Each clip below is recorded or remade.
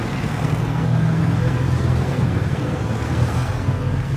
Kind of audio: remade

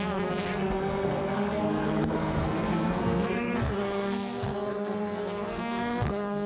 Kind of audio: remade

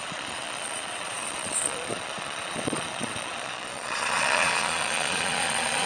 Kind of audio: remade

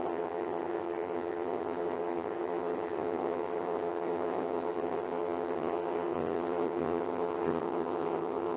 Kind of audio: remade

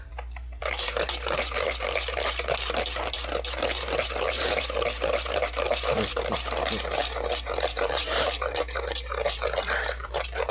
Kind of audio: remade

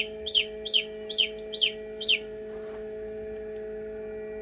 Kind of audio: recorded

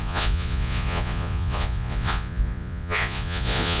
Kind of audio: remade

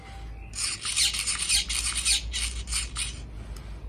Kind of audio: recorded